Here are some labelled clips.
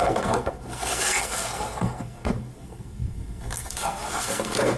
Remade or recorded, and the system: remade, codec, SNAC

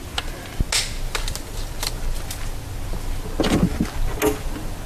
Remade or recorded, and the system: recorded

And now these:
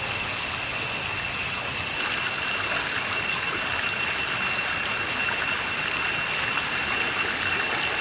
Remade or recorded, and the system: recorded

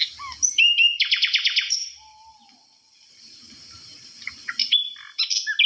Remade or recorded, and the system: recorded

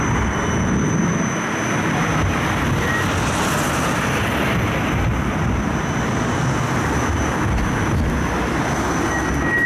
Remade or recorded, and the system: recorded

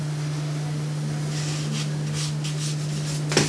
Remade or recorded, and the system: recorded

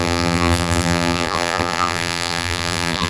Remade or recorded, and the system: remade, vocoder, BigVGAN v2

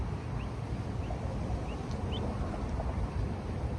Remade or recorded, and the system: recorded